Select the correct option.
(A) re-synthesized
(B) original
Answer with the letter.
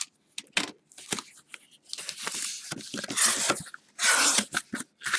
B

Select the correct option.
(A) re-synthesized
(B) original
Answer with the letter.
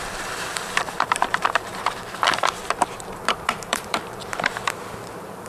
A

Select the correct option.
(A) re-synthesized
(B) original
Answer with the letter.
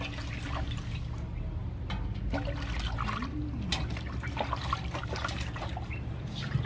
B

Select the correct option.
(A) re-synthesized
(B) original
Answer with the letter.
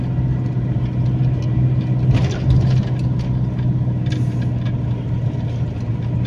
B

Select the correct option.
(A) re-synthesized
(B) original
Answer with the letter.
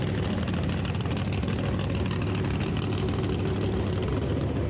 B